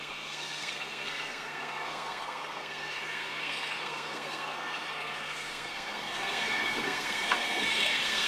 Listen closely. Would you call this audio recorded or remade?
remade